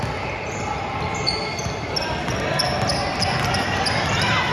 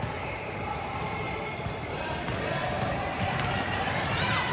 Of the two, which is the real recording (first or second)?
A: first